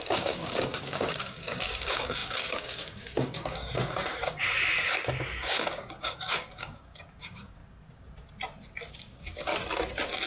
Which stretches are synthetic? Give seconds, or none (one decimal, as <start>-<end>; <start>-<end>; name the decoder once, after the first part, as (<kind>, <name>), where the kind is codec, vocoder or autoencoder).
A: 0.0-7.6 (codec, DAC); 8.9-9.5